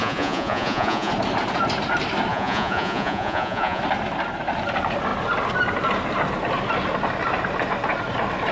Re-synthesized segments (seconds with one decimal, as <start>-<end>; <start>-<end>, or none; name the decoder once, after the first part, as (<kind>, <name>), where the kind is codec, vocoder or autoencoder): 0.0-1.1 (vocoder, Vocos); 2.3-3.8